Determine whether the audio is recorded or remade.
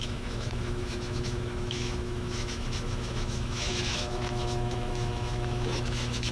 remade